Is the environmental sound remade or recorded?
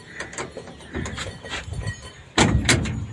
recorded